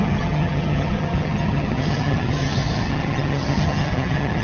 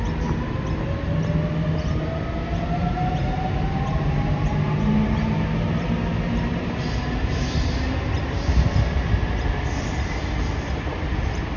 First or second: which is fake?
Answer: first